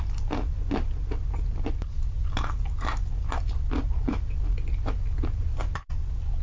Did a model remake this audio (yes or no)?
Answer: no